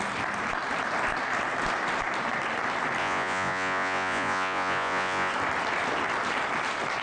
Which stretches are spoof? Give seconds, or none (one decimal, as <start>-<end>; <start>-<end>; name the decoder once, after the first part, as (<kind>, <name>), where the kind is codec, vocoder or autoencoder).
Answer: 3.0-5.3 (vocoder, Vocos)